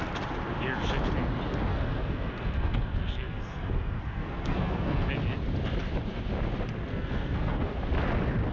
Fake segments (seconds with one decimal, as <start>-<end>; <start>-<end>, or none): 1.7-5.1; 6.9-7.8